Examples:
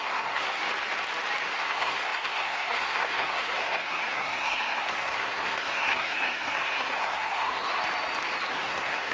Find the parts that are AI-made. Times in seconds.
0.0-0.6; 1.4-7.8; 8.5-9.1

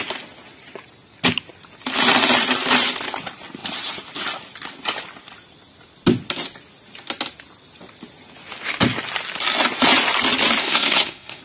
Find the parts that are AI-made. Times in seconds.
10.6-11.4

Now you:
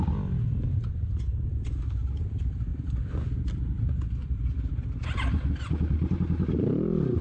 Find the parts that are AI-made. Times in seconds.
none